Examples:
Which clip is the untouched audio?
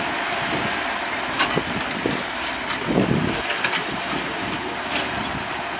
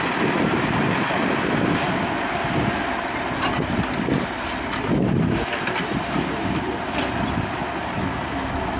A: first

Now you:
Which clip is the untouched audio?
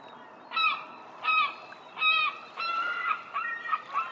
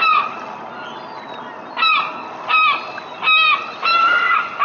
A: second